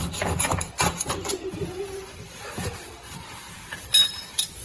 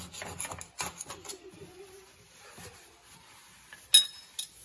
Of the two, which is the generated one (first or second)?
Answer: first